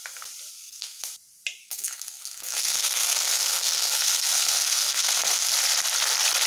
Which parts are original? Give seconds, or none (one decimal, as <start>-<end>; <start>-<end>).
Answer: 0.0-0.5; 1.0-1.6; 5.5-6.5